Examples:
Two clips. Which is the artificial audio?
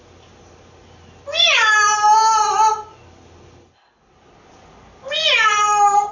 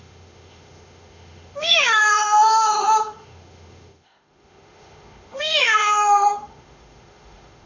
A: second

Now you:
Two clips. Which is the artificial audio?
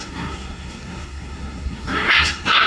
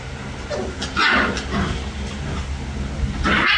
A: first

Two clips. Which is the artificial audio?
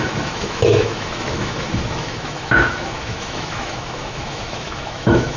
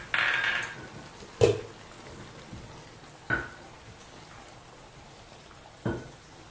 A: first